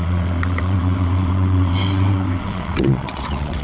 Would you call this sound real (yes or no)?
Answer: no